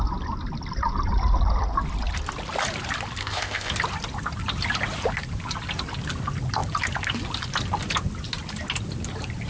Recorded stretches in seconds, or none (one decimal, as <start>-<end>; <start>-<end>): 0.0-3.2; 3.7-9.5